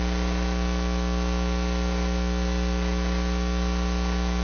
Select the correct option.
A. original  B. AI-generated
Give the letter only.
A